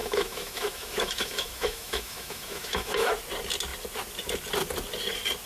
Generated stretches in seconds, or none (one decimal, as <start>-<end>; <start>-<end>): 0.0-3.1